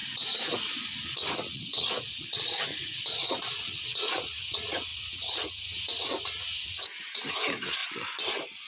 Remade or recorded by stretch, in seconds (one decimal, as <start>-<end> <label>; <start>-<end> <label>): 0.0-7.8 remade; 7.8-8.7 recorded